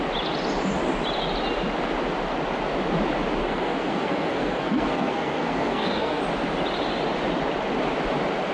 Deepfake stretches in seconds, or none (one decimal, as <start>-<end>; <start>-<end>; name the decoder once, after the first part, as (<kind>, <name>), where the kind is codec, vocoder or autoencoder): 3.4-6.2 (codec, SNAC)